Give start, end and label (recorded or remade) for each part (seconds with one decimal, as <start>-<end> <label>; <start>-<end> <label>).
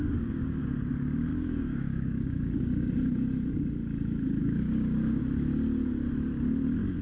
0.0-0.6 remade; 0.6-1.3 recorded; 1.3-2.9 remade; 2.9-4.4 recorded; 4.4-5.2 remade; 5.2-7.0 recorded